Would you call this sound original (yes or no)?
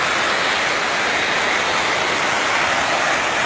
yes